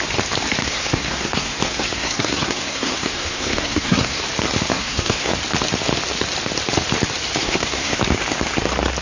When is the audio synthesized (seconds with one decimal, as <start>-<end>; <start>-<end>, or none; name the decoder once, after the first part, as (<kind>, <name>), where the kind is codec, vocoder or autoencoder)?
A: 0.6-4.2 (codec, SNAC); 4.7-5.3; 7.4-8.0